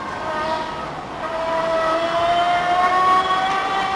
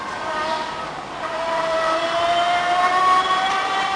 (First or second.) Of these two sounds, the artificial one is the second